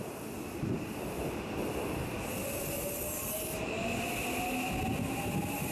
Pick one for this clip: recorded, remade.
recorded